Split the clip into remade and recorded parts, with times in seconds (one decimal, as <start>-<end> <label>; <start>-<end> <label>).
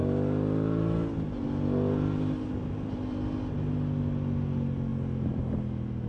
0.0-6.1 recorded